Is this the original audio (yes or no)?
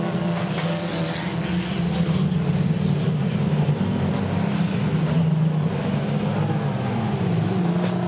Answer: yes